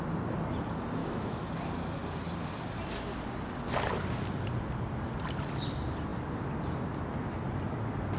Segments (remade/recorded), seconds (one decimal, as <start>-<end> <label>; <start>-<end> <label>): 0.0-1.0 recorded; 1.0-1.5 remade; 1.5-8.2 recorded

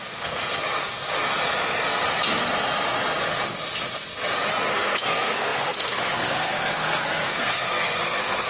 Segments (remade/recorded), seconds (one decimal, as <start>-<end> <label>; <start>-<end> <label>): 0.0-0.4 remade; 0.4-4.7 recorded; 4.7-8.5 remade

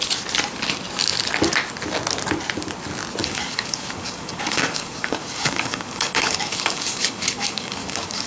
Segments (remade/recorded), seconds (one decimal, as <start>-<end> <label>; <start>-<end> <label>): 0.0-3.2 recorded; 3.2-8.3 remade

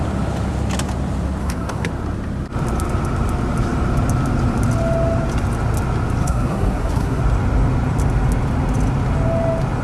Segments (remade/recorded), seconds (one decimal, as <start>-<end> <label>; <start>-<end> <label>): 0.0-1.4 recorded; 1.4-1.9 remade; 1.9-6.2 recorded; 6.2-7.2 remade; 7.2-9.8 recorded

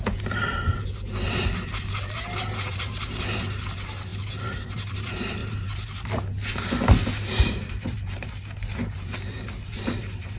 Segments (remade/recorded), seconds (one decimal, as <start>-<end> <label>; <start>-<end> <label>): 0.0-10.4 remade

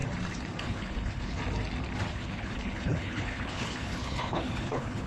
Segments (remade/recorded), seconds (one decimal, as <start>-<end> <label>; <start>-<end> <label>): 0.0-0.6 recorded; 0.6-1.4 remade; 1.4-2.1 recorded; 2.1-5.1 remade